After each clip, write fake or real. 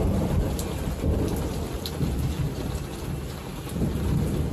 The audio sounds fake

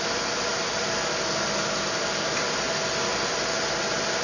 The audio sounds real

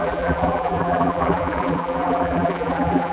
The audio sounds fake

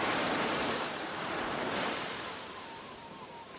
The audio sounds fake